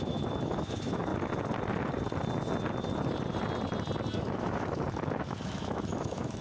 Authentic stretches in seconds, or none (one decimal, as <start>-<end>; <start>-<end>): 1.1-4.2